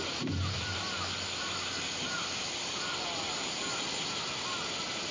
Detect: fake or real real